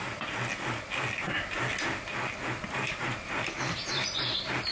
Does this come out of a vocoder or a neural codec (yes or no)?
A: no